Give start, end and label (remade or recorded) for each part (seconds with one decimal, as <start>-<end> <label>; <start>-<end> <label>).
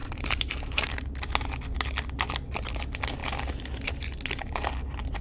0.0-0.9 remade; 0.9-3.2 recorded; 3.2-3.9 remade; 3.9-5.2 recorded